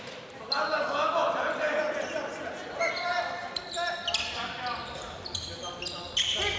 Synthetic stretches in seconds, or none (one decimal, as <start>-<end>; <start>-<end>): none